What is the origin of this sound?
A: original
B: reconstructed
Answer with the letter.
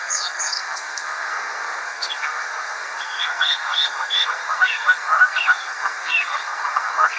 B